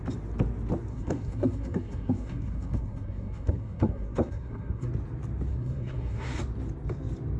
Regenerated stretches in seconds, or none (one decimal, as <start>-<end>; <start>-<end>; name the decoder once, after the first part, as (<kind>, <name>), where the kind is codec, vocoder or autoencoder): 0.9-4.9 (codec, SNAC); 5.5-6.4